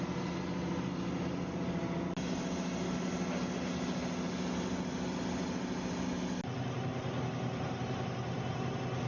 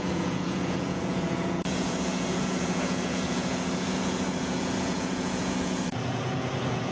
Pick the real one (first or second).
first